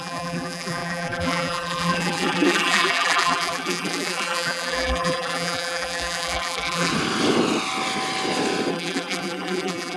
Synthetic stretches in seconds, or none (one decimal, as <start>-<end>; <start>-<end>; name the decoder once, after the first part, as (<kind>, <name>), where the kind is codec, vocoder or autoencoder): 0.0-6.9 (vocoder, BigVGAN v2); 8.7-10.0